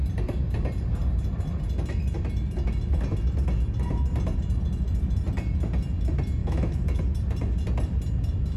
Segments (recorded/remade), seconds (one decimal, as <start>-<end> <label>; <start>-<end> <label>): 0.0-6.4 recorded; 6.4-7.0 remade; 7.0-8.6 recorded